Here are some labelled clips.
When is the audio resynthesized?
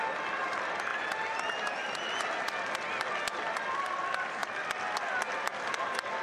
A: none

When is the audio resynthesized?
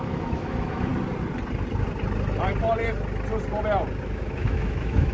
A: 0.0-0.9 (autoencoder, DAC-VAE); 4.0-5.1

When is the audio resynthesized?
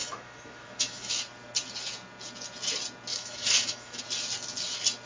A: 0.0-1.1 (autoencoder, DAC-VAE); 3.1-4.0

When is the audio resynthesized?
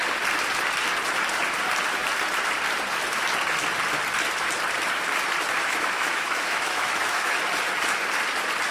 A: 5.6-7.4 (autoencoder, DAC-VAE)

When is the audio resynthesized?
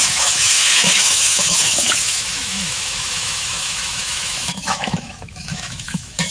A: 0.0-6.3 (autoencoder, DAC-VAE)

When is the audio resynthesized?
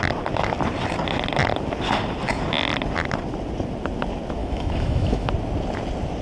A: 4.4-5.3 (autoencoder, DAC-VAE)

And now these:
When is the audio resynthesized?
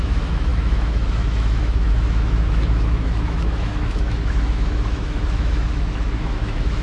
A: 0.0-6.8 (autoencoder, DAC-VAE)